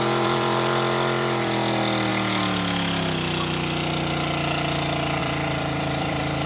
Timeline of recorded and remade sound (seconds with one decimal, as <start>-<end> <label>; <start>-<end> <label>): 0.0-2.1 remade; 2.1-5.2 recorded; 5.2-6.5 remade